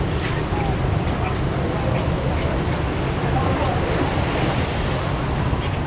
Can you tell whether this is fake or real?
real